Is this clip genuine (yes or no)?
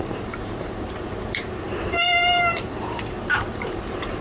no